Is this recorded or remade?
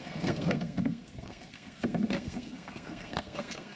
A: remade